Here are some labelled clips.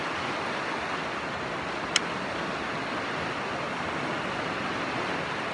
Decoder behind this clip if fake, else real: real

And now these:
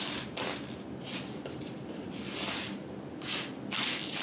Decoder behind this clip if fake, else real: real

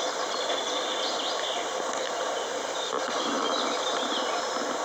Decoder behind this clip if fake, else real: real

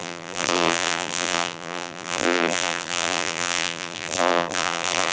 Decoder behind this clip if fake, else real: fake, vocoder, BigVGAN v2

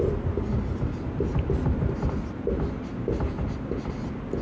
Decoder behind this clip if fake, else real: real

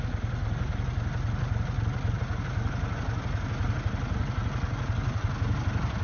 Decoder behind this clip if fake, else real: real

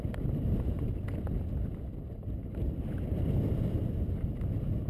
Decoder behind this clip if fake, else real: real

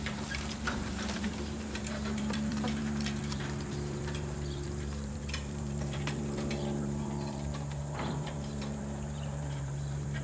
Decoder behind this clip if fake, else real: fake, vocoder, BigVGAN v2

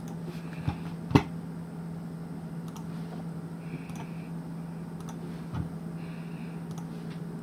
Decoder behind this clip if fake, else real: real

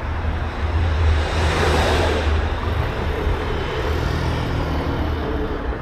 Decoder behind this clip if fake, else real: fake, vocoder, BigVGAN v2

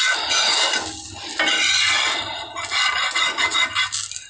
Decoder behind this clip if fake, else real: real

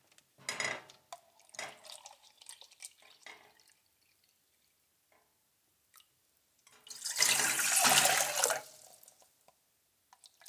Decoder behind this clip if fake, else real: real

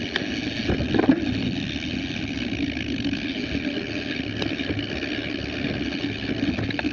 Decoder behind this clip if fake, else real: real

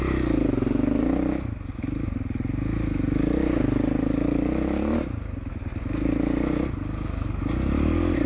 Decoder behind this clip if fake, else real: real